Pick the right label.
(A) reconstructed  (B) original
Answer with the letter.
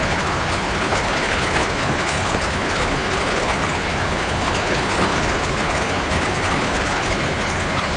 A